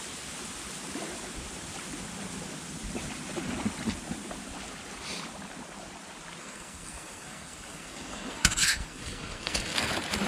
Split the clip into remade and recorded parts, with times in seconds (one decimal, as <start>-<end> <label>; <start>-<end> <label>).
0.0-6.4 recorded; 6.4-9.9 remade; 9.9-10.3 recorded

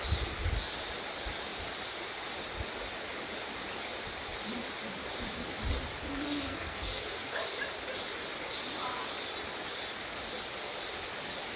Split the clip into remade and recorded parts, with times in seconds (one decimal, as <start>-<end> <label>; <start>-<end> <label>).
0.0-6.1 recorded; 6.1-7.4 remade; 7.4-11.6 recorded

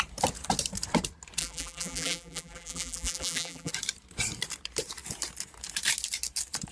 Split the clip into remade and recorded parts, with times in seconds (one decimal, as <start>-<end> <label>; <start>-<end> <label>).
0.0-1.4 recorded; 1.4-3.7 remade; 3.7-6.7 recorded

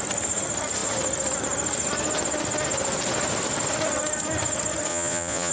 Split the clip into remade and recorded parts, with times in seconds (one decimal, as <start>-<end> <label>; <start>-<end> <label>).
0.0-4.9 recorded; 4.9-5.5 remade

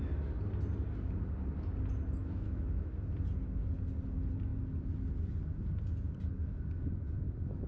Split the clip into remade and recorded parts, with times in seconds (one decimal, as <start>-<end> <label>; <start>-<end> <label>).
0.0-2.2 recorded; 2.2-2.9 remade; 2.9-7.7 recorded